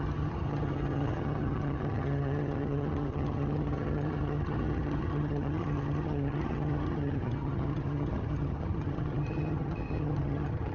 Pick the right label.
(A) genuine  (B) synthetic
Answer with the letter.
B